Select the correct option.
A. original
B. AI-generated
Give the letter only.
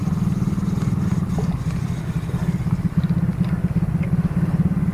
A